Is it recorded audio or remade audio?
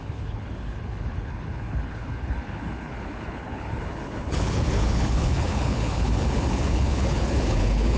remade